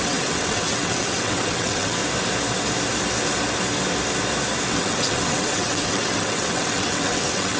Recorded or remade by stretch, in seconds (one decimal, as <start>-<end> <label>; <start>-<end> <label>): 0.0-2.0 remade; 2.0-4.7 recorded; 4.7-7.6 remade